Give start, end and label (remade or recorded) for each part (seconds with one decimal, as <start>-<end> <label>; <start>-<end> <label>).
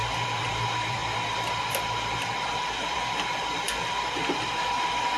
0.0-5.2 remade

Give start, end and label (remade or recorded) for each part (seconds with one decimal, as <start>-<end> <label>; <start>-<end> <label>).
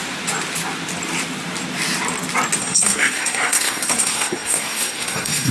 0.0-2.6 recorded; 2.6-5.5 remade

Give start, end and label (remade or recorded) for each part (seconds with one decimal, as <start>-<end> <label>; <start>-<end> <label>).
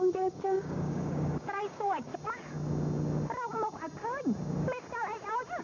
0.0-2.1 remade; 2.1-5.6 recorded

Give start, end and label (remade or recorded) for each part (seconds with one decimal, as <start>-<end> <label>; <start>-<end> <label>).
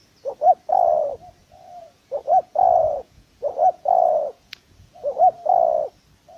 0.0-1.4 recorded; 1.4-5.2 remade; 5.2-6.4 recorded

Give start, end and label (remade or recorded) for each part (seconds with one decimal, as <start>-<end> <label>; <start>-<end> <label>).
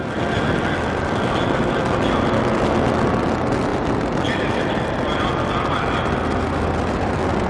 0.0-3.7 recorded; 3.7-4.7 remade; 4.7-7.5 recorded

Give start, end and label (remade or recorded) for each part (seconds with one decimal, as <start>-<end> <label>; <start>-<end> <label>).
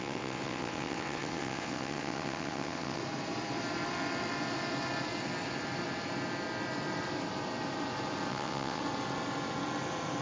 0.0-3.0 remade; 3.0-8.3 recorded; 8.3-8.8 remade; 8.8-10.2 recorded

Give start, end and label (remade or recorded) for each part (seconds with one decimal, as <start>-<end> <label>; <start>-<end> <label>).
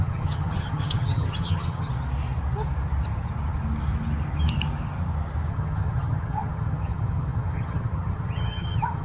0.0-1.9 remade; 1.9-5.5 recorded; 5.5-9.0 remade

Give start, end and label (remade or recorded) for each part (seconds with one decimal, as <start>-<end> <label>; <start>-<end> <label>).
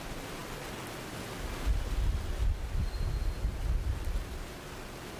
0.0-5.2 recorded